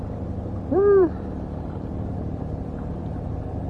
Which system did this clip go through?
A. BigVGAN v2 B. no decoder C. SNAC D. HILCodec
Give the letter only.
A